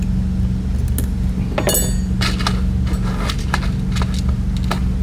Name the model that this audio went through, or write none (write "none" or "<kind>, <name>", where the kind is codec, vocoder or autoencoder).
none